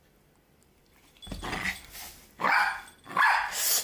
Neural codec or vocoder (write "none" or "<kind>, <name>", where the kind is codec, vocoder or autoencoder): none